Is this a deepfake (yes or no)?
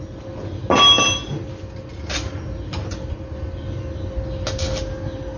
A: no